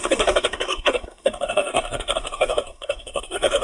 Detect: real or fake fake